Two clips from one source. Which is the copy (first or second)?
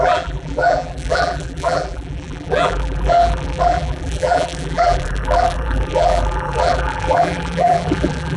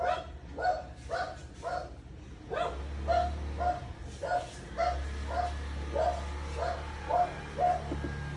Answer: first